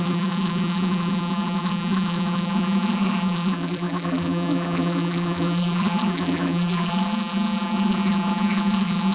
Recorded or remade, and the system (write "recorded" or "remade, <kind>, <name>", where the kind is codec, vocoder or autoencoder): remade, vocoder, BigVGAN v2